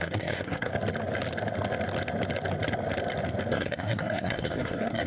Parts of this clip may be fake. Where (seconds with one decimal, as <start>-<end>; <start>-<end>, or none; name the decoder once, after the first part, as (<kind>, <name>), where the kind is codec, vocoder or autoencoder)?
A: 0.0-0.7 (codec, SNAC); 3.5-5.1